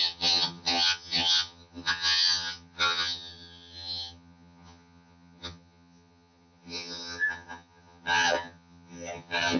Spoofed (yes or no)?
yes